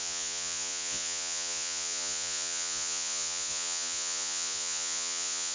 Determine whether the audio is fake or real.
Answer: fake